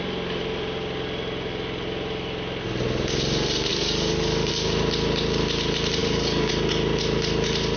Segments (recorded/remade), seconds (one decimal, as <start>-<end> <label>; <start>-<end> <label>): 0.0-3.7 recorded; 3.7-4.5 remade; 4.5-6.0 recorded; 6.0-6.5 remade; 6.5-7.8 recorded